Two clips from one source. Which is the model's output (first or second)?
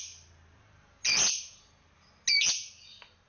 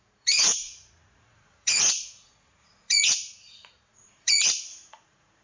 second